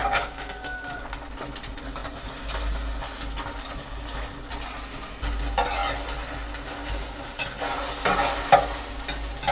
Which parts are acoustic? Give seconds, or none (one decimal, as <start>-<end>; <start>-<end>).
1.1-9.5